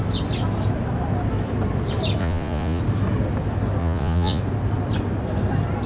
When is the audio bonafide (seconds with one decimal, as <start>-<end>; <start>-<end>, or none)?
0.0-2.2; 2.8-3.8; 4.4-5.9